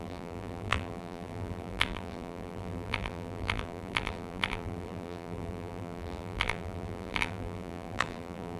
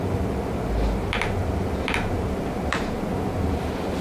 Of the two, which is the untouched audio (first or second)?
second